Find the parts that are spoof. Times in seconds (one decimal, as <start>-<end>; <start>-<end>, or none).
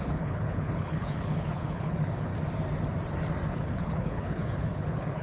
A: 0.0-2.3; 3.5-5.2